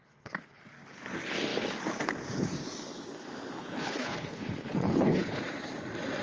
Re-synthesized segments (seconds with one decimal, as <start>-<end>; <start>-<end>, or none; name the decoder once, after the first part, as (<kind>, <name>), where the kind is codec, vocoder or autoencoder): 0.0-0.6 (codec, HILCodec); 3.6-5.4